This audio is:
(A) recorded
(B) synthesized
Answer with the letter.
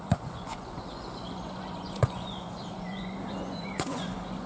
B